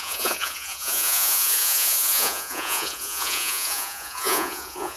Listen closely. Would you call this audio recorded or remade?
remade